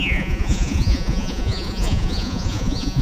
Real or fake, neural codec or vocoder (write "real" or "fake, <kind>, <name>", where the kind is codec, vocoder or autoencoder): fake, vocoder, Vocos